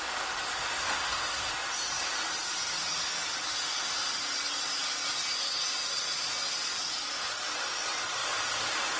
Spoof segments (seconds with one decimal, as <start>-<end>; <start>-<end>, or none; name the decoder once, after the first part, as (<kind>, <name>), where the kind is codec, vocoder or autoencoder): 0.8-1.5 (codec, SNAC)

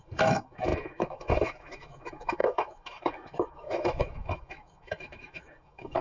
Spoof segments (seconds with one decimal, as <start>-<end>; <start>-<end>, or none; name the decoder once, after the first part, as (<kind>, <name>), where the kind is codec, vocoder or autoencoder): 0.0-6.0 (autoencoder, DAC-VAE)

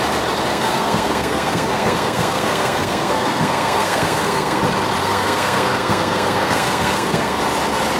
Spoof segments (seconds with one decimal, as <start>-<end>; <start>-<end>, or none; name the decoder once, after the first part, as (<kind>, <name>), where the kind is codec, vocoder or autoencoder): 0.5-4.6 (codec, SNAC); 5.0-7.4

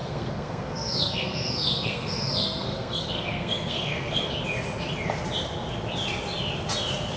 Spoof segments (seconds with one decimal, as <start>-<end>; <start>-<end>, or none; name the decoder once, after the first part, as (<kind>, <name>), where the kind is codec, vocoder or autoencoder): 0.0-4.3 (codec, SNAC)

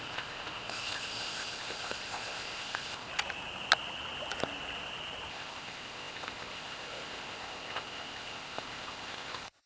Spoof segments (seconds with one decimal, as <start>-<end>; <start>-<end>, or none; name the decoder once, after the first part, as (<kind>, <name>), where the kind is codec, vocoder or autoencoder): 0.0-3.1 (codec, ZipCodec); 5.3-9.7

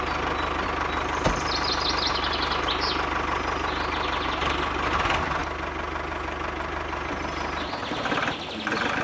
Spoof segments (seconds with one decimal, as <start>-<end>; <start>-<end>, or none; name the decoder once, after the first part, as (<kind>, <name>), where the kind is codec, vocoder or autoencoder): none

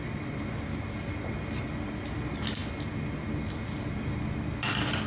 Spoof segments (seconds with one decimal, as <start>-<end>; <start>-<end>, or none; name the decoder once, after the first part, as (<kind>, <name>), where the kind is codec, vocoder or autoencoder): none